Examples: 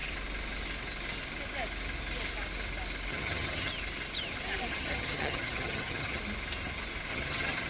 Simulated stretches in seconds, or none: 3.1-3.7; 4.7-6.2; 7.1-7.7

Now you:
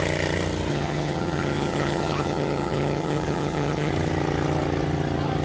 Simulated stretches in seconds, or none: 0.7-3.9

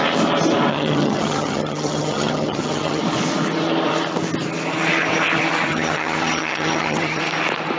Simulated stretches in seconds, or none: 0.7-3.0; 5.7-7.2

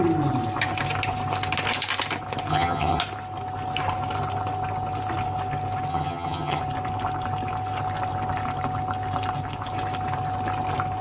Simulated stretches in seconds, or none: 2.5-3.0; 5.9-6.6

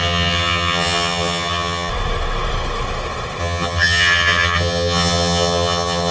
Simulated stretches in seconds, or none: 0.0-1.9; 3.4-6.1

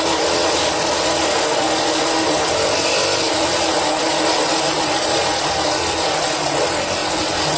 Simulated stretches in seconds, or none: none

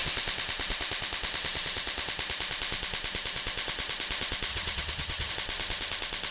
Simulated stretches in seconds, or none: 4.5-5.3

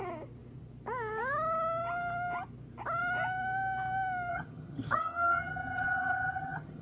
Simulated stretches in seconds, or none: 4.3-6.8